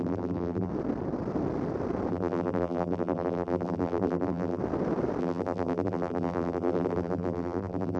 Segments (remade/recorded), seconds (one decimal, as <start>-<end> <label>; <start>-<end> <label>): 0.0-0.7 remade; 0.7-2.1 recorded; 2.1-4.6 remade; 4.6-5.2 recorded; 5.2-8.0 remade